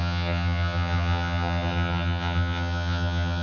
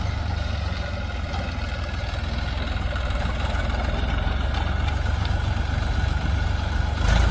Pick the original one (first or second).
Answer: second